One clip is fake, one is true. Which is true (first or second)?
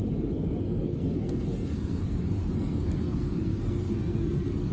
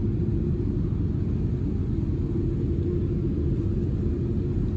second